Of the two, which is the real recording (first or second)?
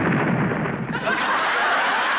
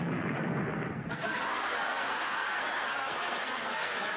first